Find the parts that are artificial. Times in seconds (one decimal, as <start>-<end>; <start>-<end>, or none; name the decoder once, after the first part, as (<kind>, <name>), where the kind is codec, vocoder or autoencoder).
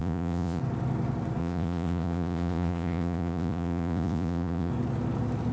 0.0-0.6 (vocoder, Vocos); 1.4-4.7